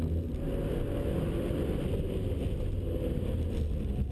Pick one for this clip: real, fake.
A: real